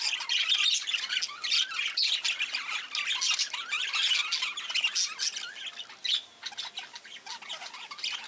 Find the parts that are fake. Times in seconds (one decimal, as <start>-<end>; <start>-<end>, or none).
none